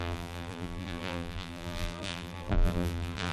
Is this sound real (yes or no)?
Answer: no